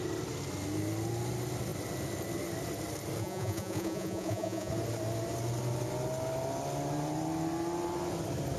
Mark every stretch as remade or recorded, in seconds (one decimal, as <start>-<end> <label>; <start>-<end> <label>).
0.0-3.2 recorded; 3.2-4.7 remade; 4.7-8.6 recorded